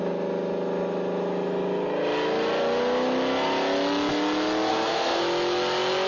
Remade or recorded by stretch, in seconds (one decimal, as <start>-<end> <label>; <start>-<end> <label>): 0.0-4.7 recorded; 4.7-5.2 remade; 5.2-6.1 recorded